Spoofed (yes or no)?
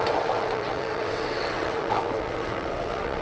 yes